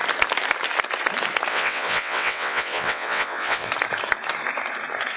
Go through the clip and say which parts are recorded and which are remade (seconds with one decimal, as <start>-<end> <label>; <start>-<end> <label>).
0.0-1.5 recorded; 1.5-3.7 remade; 3.7-5.2 recorded